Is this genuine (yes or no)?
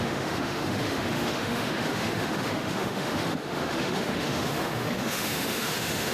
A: no